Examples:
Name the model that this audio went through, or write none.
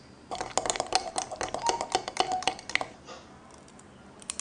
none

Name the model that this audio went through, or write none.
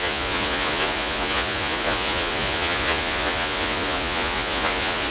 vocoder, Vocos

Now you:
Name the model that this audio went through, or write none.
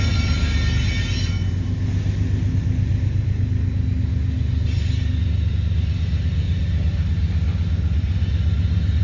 none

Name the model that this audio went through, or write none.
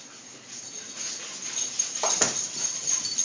none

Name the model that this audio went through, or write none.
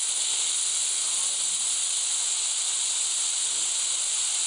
none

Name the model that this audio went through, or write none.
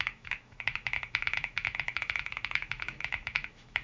autoencoder, DAC-VAE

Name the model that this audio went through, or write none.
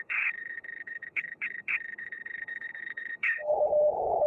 codec, HILCodec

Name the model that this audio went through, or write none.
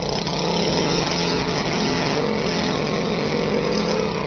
vocoder, HiFi-GAN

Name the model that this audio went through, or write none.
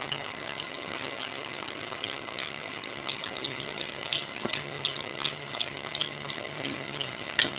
vocoder, HiFi-GAN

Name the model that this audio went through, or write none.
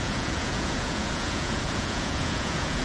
vocoder, Vocos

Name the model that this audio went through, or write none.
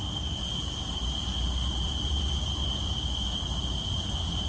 none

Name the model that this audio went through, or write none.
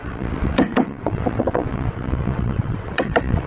vocoder, WaveNeXt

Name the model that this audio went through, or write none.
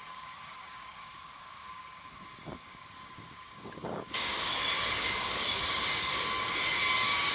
codec, DAC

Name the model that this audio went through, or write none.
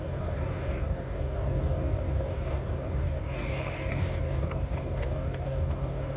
codec, DAC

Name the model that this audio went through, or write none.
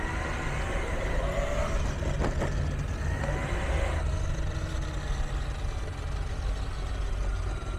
none